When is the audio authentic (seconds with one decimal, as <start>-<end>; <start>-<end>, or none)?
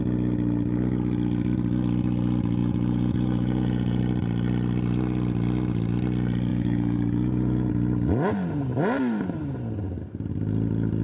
0.0-2.6; 4.0-6.5; 7.7-11.0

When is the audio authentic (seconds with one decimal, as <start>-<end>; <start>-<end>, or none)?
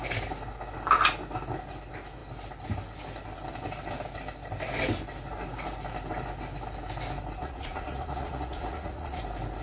0.0-7.4; 9.2-9.6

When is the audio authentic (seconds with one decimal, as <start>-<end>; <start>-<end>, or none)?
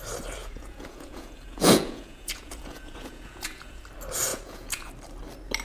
0.0-0.4; 3.8-4.3; 4.9-5.6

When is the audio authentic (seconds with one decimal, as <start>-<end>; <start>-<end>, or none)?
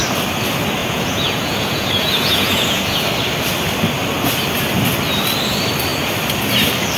0.0-0.8; 3.0-7.0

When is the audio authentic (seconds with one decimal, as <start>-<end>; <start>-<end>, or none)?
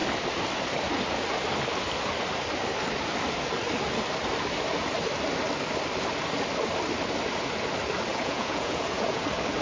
0.0-8.1; 9.2-9.6